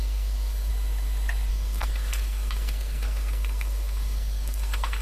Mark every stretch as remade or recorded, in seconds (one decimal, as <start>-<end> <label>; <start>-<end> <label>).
0.0-0.7 remade; 0.7-1.5 recorded; 1.5-5.0 remade